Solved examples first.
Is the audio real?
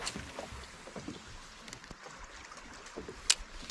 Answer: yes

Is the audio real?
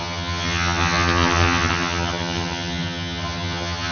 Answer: no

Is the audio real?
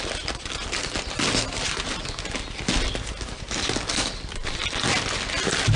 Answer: yes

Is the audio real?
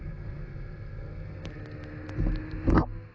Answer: yes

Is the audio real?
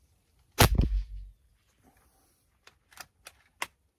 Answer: yes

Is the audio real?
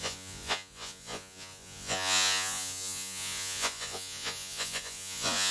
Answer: no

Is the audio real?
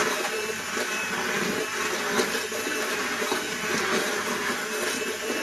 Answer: yes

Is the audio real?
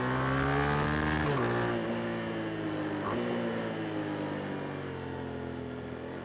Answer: yes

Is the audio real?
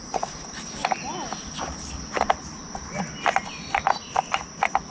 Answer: yes